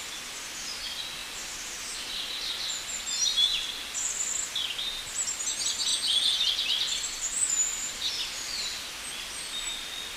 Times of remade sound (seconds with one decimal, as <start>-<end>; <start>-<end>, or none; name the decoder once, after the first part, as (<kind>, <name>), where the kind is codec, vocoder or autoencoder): 5.9-8.8 (vocoder, BigVGAN v2)